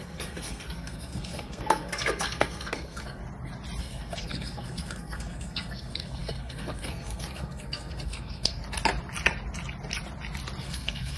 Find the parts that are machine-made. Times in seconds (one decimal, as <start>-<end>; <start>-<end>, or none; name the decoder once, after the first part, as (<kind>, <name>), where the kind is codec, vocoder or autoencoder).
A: 0.0-3.2 (codec, SNAC); 3.8-8.6; 10.6-11.2